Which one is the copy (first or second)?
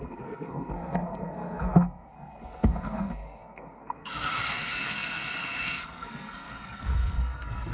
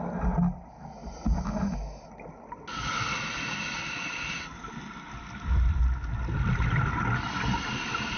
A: first